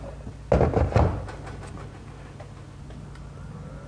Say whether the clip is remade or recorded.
recorded